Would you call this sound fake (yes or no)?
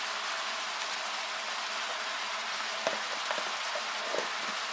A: no